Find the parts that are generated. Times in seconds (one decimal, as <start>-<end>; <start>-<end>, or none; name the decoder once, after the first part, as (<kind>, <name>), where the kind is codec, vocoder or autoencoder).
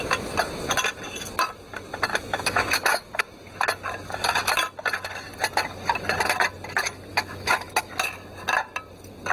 2.1-3.2 (autoencoder, DAC-VAE); 7.1-7.9